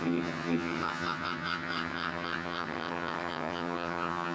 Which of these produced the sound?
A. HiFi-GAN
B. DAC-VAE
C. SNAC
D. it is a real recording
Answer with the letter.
A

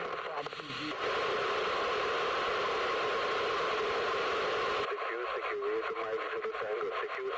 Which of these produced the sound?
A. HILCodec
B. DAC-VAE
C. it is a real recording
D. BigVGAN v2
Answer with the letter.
C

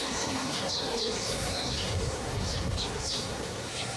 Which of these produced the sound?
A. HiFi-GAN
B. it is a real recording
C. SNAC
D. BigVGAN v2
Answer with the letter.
C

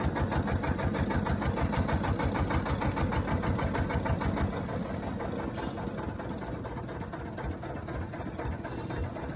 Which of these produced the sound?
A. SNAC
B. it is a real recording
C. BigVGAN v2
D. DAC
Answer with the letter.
B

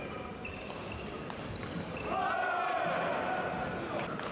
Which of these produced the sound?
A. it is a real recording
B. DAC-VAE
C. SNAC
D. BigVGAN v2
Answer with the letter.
A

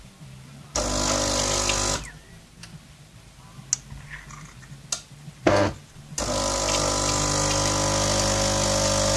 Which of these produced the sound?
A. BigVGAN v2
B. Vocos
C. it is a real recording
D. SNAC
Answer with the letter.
C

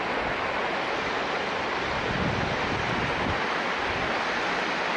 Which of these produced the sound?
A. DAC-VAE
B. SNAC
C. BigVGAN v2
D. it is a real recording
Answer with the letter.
D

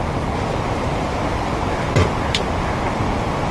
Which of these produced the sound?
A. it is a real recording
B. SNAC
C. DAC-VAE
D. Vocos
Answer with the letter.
A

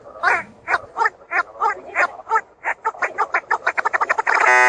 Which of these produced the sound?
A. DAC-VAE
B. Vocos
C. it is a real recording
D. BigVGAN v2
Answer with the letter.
C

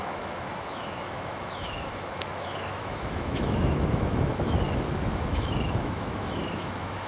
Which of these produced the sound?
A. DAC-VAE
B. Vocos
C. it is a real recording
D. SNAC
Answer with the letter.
A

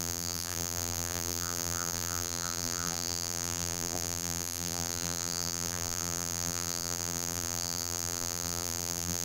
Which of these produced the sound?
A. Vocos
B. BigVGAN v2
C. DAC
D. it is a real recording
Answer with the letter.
B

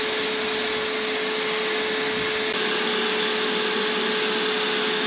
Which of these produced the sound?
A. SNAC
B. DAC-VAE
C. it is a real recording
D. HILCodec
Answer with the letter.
C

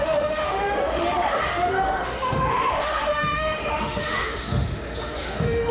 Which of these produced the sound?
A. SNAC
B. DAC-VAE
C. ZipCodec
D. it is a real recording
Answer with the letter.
B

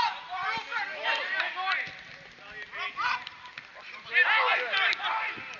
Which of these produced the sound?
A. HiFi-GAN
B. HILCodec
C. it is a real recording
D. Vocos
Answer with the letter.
C